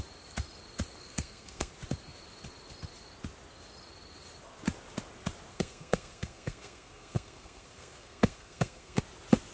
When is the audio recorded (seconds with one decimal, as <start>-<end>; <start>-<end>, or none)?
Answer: 0.0-1.0; 1.7-5.5; 9.0-9.5